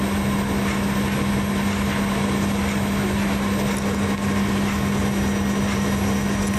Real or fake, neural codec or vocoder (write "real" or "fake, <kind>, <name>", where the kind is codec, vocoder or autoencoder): real